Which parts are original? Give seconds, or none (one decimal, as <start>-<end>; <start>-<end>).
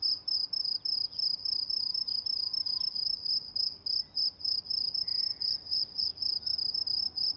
0.0-5.3; 6.1-7.4